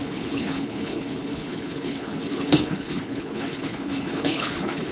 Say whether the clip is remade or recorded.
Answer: remade